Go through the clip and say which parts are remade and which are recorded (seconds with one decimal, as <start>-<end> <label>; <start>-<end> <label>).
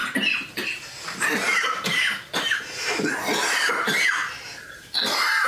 0.0-2.9 remade; 2.9-3.4 recorded; 3.4-4.7 remade; 4.7-5.5 recorded